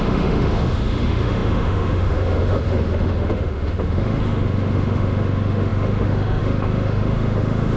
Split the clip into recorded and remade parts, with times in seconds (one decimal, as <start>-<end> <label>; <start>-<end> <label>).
0.0-7.8 remade